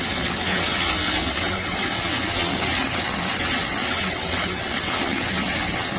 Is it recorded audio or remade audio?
remade